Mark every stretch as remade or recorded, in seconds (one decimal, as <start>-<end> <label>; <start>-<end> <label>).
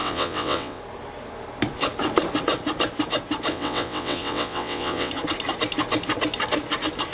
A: 0.0-0.8 remade; 0.8-3.5 recorded; 3.5-5.1 remade; 5.1-7.1 recorded